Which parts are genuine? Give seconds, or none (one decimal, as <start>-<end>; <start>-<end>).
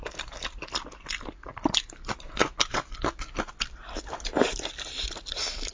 0.0-5.7